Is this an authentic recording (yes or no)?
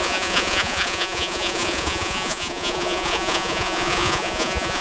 no